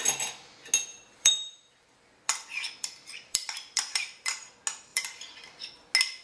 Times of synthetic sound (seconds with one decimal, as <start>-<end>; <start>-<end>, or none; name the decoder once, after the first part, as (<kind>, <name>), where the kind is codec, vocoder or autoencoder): 0.9-4.4 (vocoder, BigVGAN v2); 4.9-5.6